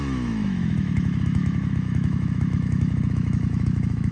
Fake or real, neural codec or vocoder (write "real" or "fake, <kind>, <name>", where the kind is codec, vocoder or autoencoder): fake, autoencoder, DAC-VAE